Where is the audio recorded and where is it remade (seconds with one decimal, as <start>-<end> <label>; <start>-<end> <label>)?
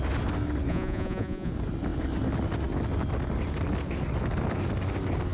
0.0-0.7 recorded; 0.7-1.5 remade; 1.5-5.3 recorded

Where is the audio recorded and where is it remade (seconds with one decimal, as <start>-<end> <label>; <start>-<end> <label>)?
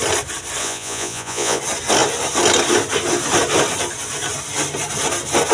0.0-0.6 recorded; 0.6-1.6 remade; 1.6-5.5 recorded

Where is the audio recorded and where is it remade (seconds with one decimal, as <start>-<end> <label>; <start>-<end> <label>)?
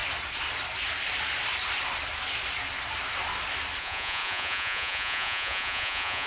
0.0-3.8 recorded; 3.8-6.3 remade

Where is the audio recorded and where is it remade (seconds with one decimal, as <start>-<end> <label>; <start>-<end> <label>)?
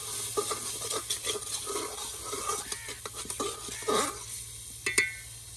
0.0-5.6 recorded